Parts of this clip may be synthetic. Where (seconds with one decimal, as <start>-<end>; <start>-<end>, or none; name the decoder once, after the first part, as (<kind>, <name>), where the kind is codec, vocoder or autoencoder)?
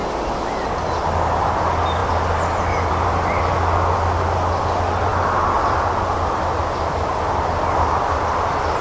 none